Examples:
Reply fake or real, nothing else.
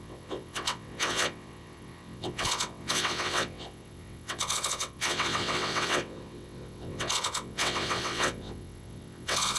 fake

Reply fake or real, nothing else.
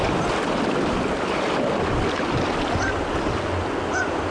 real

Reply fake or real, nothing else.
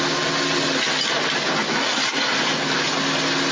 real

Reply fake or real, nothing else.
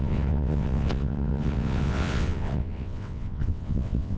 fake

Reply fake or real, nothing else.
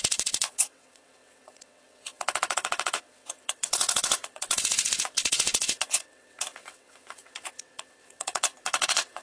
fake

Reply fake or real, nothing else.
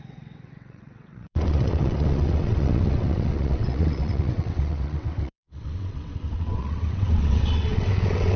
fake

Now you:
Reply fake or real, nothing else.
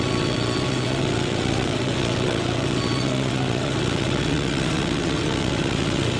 fake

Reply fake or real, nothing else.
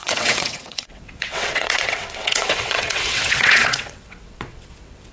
fake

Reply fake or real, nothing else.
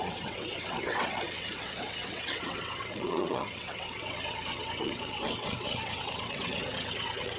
fake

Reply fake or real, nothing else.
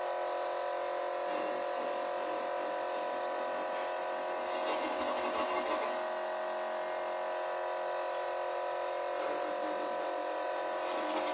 real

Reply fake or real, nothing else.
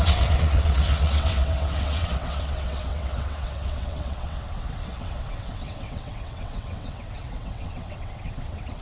fake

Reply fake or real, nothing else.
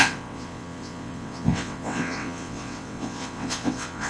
fake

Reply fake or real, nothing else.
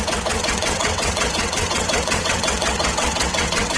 fake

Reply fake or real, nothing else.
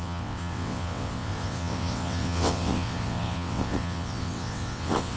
fake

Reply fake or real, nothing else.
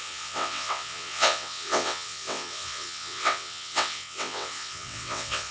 fake